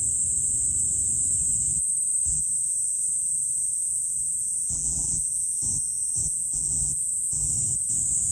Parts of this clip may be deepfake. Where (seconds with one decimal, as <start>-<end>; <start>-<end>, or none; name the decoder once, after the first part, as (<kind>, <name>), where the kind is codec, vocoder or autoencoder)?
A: 2.3-5.6 (vocoder, BigVGAN v2); 6.2-7.5